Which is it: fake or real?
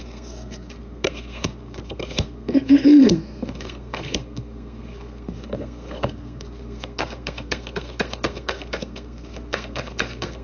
fake